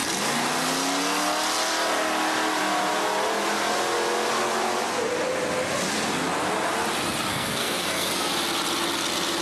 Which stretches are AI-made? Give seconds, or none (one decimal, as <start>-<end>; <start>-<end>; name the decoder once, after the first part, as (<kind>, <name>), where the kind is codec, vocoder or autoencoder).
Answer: 7.3-8.3 (codec, SNAC)